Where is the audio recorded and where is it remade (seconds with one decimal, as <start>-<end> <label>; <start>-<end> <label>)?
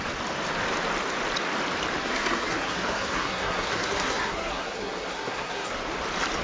0.0-2.0 recorded; 2.0-5.8 remade; 5.8-6.4 recorded